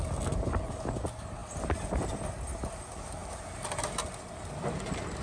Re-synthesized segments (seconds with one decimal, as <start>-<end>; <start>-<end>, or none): none